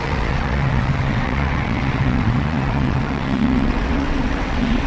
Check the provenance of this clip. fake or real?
fake